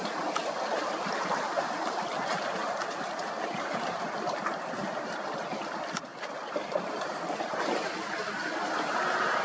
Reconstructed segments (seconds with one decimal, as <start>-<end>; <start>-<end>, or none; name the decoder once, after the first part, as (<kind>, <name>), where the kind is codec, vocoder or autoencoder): none